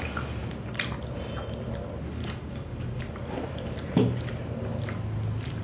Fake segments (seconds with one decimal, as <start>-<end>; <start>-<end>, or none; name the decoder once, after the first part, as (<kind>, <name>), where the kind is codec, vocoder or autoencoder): 2.2-3.0 (codec, DAC)